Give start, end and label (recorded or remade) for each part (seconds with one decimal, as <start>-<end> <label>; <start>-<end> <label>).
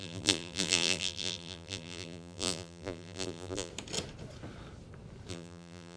0.0-3.7 remade; 3.7-5.3 recorded; 5.3-6.0 remade